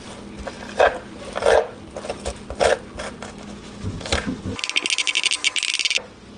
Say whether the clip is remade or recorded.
recorded